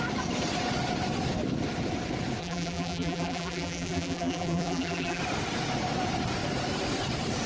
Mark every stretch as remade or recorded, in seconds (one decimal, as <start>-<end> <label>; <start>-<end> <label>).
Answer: 0.0-2.4 recorded; 2.4-5.2 remade; 5.2-7.5 recorded